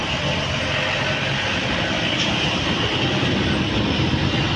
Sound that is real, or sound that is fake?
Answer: real